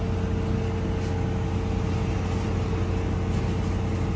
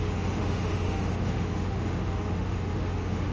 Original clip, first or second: first